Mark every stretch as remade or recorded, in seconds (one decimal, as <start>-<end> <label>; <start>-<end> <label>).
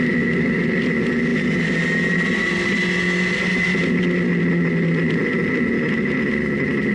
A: 0.0-6.9 recorded